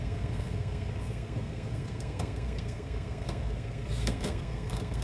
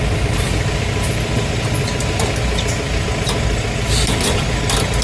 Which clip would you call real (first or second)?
second